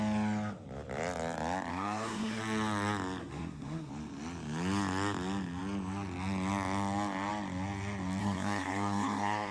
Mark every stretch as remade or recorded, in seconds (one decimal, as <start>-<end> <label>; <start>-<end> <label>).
0.0-1.7 recorded; 1.7-2.4 remade; 2.4-3.2 recorded; 3.2-3.9 remade; 3.9-8.2 recorded; 8.2-9.5 remade